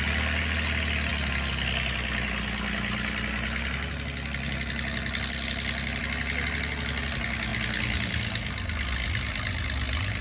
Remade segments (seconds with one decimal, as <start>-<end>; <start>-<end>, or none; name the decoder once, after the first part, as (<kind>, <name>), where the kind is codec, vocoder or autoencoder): none